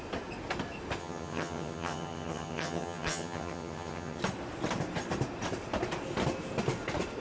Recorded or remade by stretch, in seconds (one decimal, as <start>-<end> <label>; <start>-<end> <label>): 0.0-1.0 recorded; 1.0-4.2 remade; 4.2-7.2 recorded